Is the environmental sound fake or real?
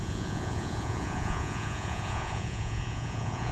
fake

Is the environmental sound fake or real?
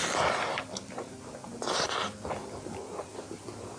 real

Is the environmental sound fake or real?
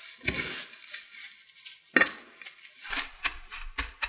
real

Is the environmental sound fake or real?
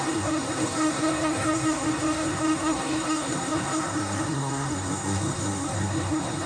fake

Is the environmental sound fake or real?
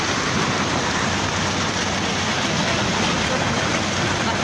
real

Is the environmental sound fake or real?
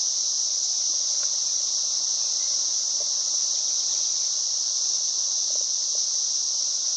real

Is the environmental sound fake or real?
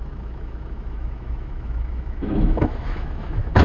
fake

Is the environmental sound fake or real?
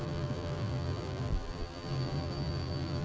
fake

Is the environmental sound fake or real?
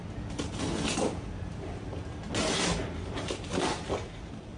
real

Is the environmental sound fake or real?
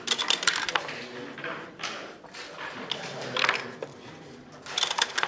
fake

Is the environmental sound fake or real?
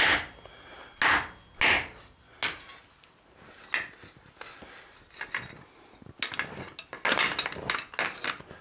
real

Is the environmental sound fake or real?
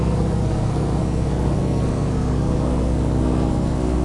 fake